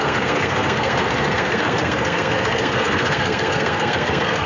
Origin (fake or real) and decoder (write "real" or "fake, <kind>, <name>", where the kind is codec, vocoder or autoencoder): fake, codec, SNAC